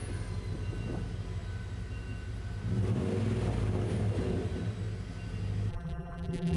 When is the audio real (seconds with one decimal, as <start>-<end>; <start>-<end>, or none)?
0.0-5.7